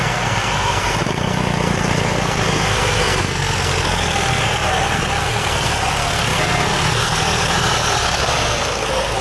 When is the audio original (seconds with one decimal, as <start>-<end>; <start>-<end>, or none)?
none